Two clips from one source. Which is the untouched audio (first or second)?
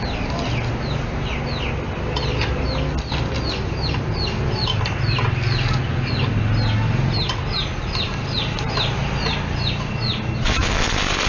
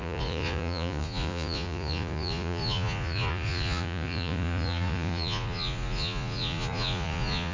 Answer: first